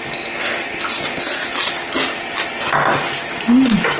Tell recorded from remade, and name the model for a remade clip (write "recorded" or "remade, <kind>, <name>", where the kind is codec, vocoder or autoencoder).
recorded